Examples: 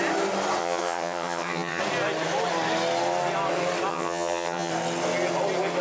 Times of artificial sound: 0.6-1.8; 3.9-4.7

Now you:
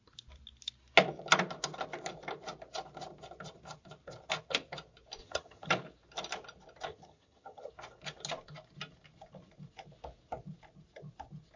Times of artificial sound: 5.2-5.7; 6.9-7.7

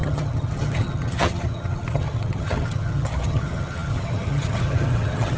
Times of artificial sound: 0.0-5.4

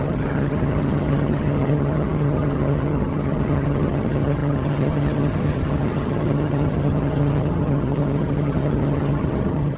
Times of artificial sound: 0.0-9.8